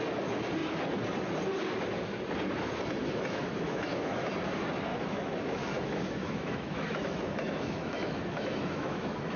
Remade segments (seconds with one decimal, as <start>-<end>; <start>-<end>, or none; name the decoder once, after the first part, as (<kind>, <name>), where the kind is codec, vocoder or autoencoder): 3.0-4.3 (autoencoder, DAC-VAE); 4.9-9.4